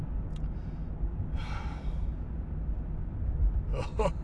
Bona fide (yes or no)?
yes